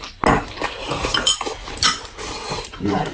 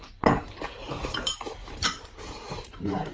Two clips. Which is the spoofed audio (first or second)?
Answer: second